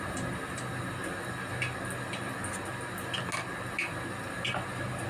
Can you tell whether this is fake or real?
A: real